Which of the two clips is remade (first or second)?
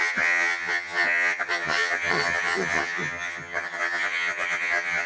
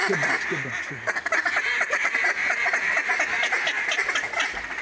first